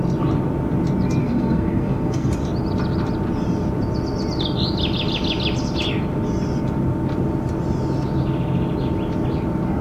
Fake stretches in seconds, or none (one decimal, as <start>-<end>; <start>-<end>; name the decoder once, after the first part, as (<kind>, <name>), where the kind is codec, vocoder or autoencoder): 1.2-2.3 (codec, SNAC)